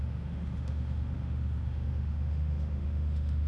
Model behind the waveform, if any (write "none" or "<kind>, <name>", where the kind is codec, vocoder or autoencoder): autoencoder, DAC-VAE